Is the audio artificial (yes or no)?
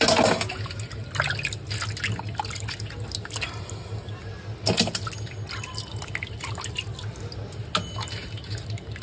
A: no